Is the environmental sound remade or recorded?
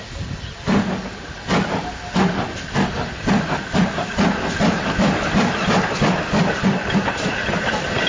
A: recorded